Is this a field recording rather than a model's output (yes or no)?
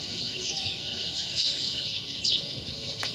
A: no